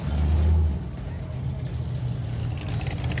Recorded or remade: recorded